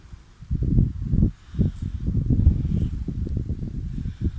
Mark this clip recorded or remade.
recorded